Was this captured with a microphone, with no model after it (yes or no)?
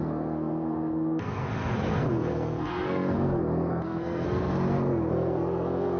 no